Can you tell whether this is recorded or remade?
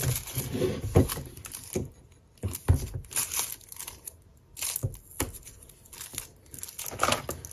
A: recorded